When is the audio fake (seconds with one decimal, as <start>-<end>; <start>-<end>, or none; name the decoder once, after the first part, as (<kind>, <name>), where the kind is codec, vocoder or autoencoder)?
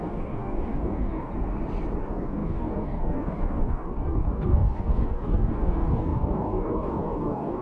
0.0-1.3 (codec, DAC); 2.0-7.6